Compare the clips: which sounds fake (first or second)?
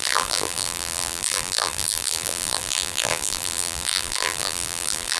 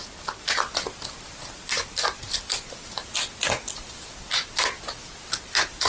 first